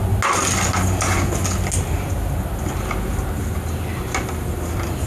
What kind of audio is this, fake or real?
real